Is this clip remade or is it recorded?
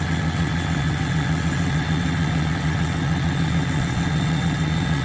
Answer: remade